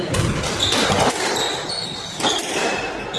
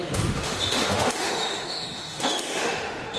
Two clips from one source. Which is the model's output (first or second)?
second